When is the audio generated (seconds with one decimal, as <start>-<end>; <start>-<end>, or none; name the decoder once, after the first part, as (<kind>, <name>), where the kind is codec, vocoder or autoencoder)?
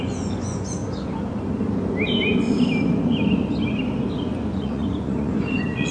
0.0-0.8 (vocoder, Vocos); 4.3-5.9